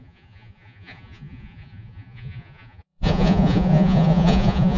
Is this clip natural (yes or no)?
no